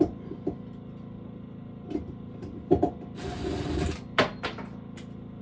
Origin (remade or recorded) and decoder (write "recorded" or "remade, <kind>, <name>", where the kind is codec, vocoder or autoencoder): recorded